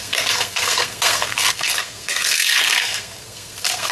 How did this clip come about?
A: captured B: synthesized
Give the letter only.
B